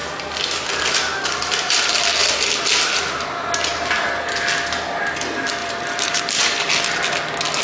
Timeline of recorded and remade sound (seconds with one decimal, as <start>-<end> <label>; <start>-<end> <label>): 0.0-3.7 recorded; 3.7-4.3 remade; 4.3-5.6 recorded; 5.6-6.3 remade; 6.3-7.6 recorded